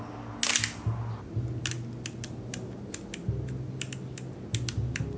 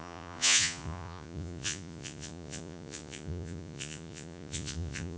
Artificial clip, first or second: second